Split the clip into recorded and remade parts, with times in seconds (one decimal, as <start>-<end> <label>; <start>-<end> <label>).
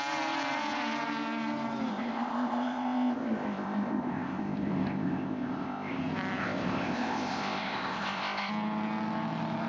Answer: 0.0-1.9 recorded; 1.9-6.0 remade; 6.0-6.4 recorded; 6.4-8.5 remade; 8.5-9.7 recorded